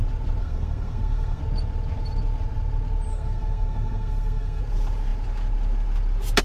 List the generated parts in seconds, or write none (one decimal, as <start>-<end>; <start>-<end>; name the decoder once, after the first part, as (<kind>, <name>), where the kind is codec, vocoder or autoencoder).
0.4-1.4 (codec, SNAC); 3.1-4.6